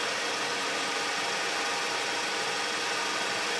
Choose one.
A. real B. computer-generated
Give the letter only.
B